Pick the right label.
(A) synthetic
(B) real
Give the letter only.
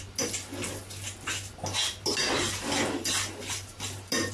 B